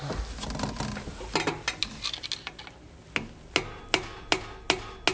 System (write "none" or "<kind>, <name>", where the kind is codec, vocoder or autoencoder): none